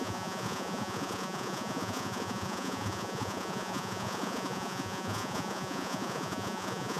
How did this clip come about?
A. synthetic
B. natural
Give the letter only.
A